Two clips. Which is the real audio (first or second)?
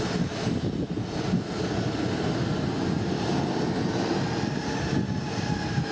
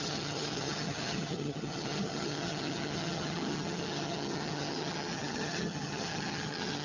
first